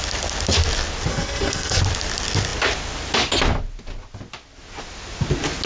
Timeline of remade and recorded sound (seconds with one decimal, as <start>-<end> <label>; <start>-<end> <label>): 0.0-1.1 recorded; 1.1-1.8 remade; 1.8-5.7 recorded